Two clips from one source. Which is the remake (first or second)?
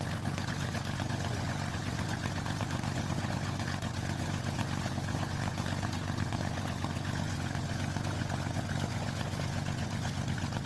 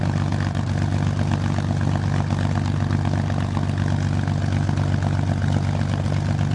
first